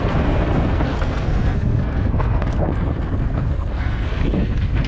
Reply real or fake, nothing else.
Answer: fake